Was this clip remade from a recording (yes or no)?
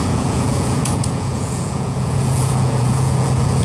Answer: yes